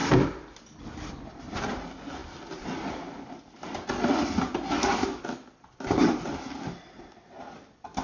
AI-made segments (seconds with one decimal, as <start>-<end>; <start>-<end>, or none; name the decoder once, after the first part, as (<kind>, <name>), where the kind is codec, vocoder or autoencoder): 0.0-1.5 (vocoder, BigVGAN v2); 2.2-2.9; 4.5-5.2